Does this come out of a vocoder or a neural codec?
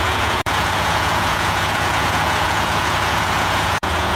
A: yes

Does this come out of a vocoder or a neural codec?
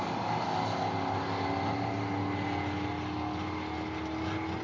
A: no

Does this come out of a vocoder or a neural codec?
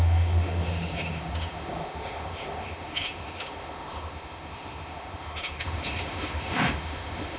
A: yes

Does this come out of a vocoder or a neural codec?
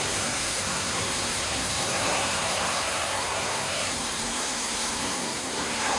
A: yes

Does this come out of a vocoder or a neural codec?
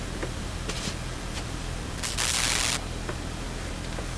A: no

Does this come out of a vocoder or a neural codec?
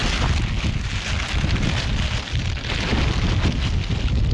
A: no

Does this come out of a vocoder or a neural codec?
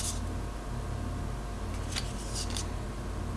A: no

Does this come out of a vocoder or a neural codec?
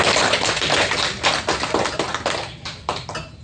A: no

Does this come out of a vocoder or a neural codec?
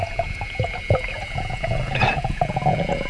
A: yes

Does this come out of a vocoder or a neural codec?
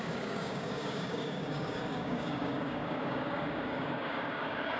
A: yes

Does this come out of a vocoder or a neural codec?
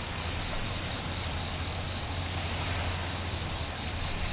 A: no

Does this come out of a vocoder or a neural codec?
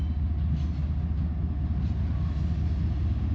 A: no